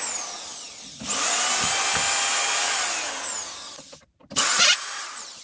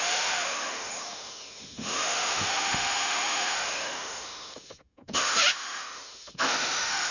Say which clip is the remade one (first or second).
second